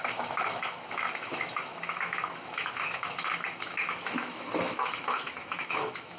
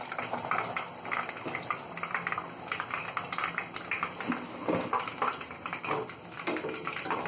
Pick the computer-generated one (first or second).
first